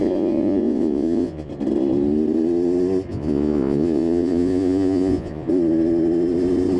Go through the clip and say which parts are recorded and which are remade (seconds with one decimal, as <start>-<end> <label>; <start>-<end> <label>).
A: 0.0-1.5 remade; 1.5-3.1 recorded; 3.1-5.5 remade; 5.5-6.8 recorded